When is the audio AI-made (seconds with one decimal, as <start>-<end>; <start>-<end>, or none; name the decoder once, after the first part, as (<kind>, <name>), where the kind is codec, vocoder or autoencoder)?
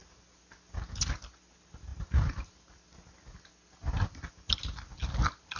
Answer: none